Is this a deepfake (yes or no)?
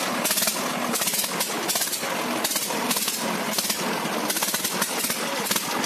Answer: no